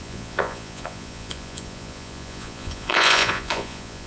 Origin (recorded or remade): remade